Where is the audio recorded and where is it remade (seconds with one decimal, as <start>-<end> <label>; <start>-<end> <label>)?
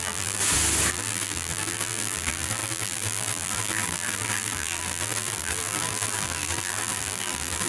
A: 0.0-0.4 remade; 0.4-0.9 recorded; 0.9-7.7 remade